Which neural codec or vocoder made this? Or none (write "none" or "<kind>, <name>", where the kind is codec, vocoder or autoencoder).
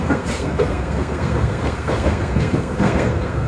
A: codec, SNAC